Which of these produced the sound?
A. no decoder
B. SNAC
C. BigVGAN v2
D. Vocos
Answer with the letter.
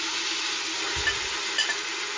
A